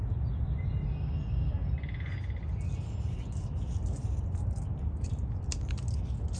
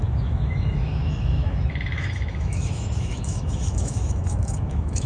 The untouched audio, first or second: first